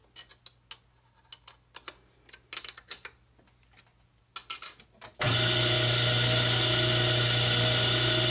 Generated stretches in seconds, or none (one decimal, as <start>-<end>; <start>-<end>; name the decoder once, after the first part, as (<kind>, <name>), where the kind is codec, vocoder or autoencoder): none